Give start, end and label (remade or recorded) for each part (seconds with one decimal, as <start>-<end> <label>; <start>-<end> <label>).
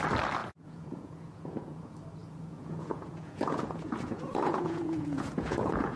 0.0-0.4 recorded; 0.4-1.8 remade; 1.8-2.2 recorded; 2.2-6.0 remade